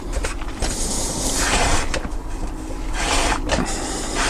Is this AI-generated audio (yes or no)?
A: no